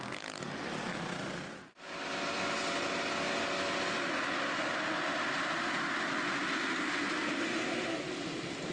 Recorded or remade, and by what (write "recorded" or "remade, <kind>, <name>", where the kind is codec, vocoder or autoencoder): recorded